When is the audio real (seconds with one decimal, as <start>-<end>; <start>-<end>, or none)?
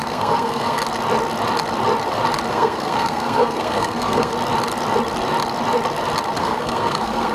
0.8-2.5; 4.3-6.4